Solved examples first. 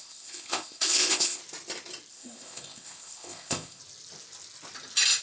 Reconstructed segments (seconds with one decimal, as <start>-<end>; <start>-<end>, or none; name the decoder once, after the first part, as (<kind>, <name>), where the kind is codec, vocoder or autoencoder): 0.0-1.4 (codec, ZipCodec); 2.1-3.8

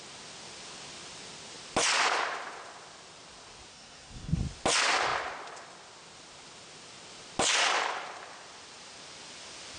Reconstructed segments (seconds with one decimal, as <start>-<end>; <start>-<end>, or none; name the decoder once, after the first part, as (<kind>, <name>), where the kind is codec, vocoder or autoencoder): 3.7-4.4 (codec, SNAC)

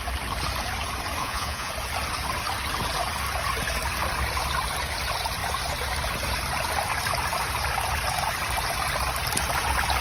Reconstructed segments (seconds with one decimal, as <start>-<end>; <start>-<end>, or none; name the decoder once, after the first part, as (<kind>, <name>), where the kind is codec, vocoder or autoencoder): 1.2-1.7 (vocoder, Vocos)